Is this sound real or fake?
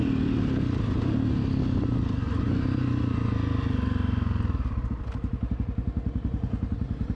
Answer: real